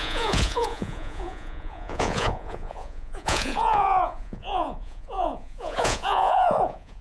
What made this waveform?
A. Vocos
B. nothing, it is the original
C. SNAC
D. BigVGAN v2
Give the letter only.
A